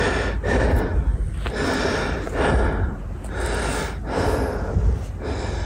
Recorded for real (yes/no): yes